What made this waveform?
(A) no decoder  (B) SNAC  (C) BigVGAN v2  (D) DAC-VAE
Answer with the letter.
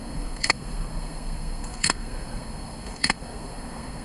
B